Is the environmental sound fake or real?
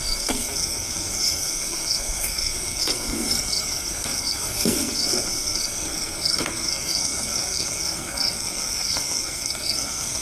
fake